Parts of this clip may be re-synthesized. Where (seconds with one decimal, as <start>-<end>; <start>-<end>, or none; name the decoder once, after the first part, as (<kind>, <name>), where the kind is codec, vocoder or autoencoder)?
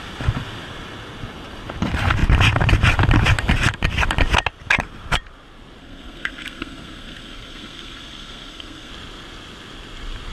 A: 5.8-8.9 (codec, SNAC)